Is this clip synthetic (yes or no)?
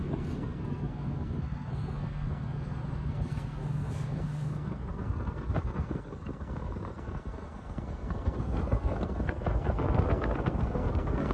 yes